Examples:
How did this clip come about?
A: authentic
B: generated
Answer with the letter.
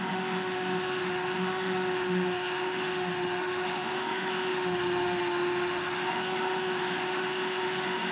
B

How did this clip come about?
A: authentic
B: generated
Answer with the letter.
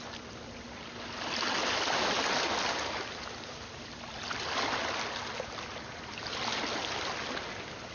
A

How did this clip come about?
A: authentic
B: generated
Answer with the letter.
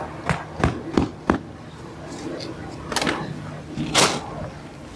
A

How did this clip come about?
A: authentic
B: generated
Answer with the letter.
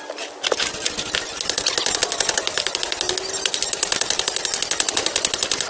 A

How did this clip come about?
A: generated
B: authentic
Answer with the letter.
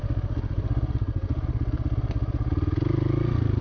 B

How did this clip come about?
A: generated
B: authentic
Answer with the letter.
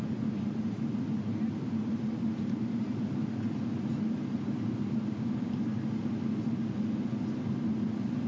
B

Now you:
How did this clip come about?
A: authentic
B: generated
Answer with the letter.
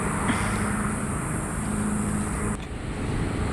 A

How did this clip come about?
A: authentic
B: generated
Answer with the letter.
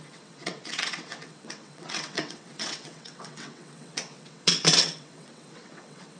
B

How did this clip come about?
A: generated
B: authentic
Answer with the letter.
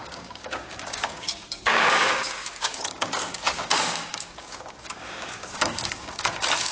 A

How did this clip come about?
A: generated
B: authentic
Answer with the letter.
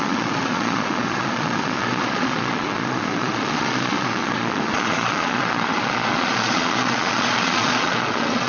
A